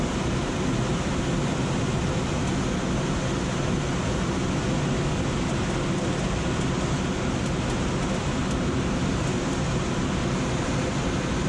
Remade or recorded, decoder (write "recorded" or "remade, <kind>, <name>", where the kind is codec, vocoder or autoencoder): recorded